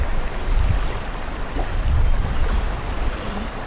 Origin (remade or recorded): remade